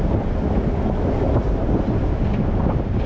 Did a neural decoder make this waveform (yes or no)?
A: no